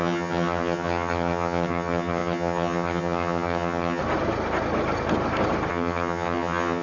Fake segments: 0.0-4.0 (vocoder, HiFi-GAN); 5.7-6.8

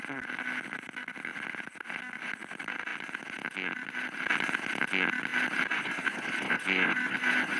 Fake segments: none

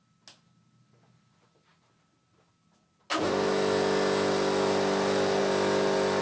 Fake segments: none

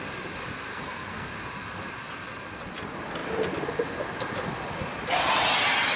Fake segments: 0.7-1.3 (codec, SNAC)

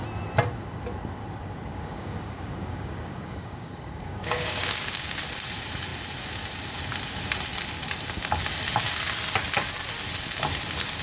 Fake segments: 1.7-5.2 (codec, DAC)

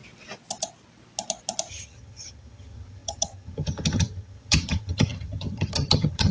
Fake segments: 1.7-6.3 (vocoder, HiFi-GAN)